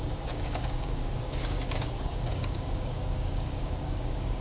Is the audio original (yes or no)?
no